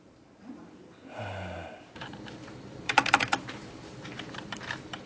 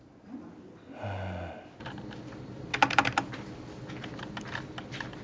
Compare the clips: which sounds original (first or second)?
second